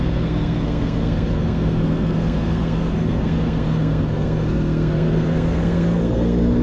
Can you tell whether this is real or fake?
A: fake